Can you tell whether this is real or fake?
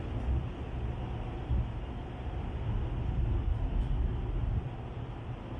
real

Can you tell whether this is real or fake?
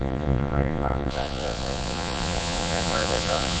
fake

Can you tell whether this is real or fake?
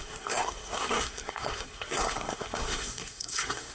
fake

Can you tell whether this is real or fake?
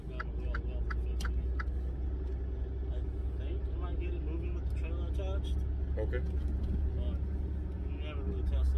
real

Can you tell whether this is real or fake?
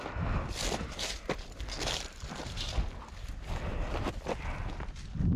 real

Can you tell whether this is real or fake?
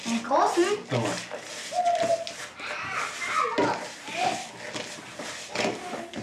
real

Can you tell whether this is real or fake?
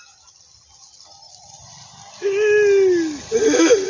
real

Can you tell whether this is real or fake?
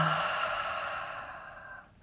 real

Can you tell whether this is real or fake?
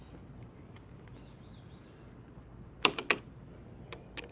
real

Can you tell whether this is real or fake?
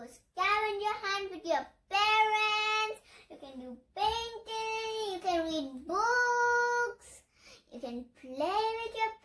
real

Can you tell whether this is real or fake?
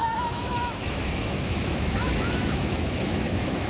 fake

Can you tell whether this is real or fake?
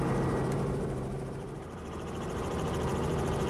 fake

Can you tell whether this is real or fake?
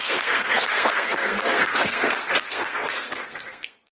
fake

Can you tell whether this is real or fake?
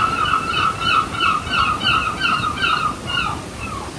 fake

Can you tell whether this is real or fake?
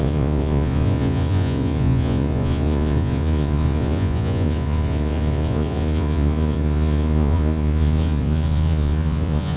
fake